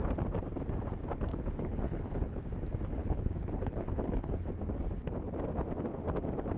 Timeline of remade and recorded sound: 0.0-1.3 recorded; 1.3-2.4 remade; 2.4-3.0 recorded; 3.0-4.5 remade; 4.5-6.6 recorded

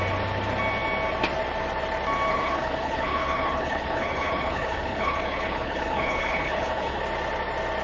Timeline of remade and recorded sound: 0.0-2.3 recorded; 2.3-7.0 remade; 7.0-7.8 recorded

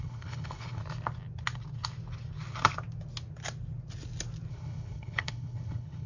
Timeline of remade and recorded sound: 0.0-0.8 remade; 0.8-4.5 recorded; 4.5-6.1 remade

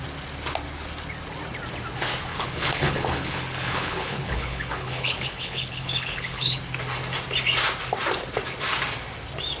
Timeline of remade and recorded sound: 0.0-2.3 recorded; 2.3-6.6 remade; 6.6-9.6 recorded

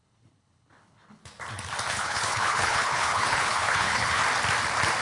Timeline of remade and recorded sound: 0.0-1.2 remade; 1.2-1.9 recorded; 1.9-4.2 remade; 4.2-5.0 recorded

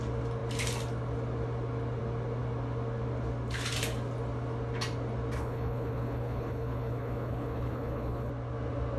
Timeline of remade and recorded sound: 0.0-5.4 recorded; 5.4-8.3 remade; 8.3-9.0 recorded

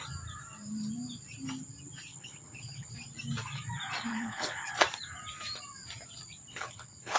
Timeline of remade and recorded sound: 0.0-2.1 recorded; 2.1-2.9 remade; 2.9-4.1 recorded; 4.1-4.7 remade; 4.7-6.5 recorded; 6.5-7.2 remade

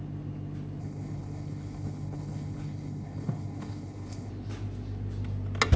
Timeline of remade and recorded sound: 0.0-0.8 recorded; 0.8-4.3 remade; 4.3-5.8 recorded